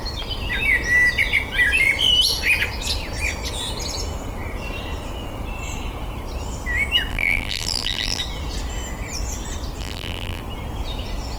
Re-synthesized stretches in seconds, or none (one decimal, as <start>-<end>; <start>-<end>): 7.1-8.2; 9.8-10.4